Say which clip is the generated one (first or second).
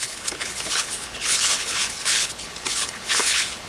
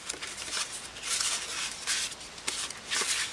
first